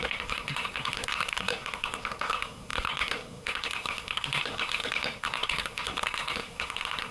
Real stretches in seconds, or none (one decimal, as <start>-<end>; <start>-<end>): none